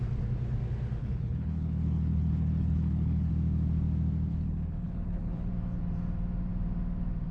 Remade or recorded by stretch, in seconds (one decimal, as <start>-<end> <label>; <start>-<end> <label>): 0.0-1.0 recorded; 1.0-3.3 remade; 3.3-4.3 recorded; 4.3-5.5 remade; 5.5-7.3 recorded